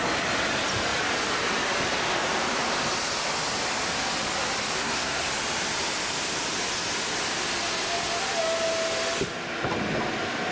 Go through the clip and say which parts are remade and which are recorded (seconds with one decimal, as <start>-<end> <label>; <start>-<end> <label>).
0.0-4.8 recorded; 4.8-5.3 remade; 5.3-10.5 recorded